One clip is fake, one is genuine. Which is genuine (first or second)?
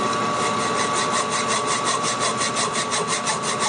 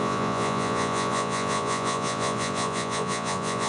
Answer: first